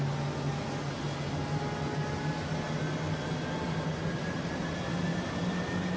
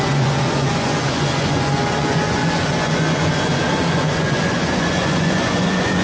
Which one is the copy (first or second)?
second